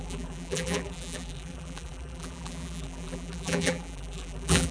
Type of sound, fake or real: fake